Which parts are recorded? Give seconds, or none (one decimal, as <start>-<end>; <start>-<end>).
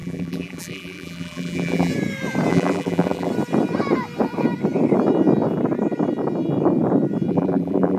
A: 1.9-2.5; 3.3-7.3